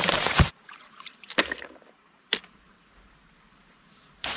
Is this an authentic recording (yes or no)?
no